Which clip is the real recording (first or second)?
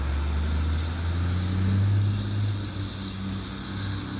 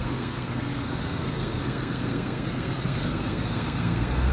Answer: first